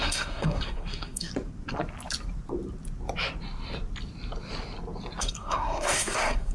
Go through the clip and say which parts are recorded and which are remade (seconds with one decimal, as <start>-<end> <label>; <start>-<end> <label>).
0.0-1.3 remade; 1.3-5.2 recorded; 5.2-6.5 remade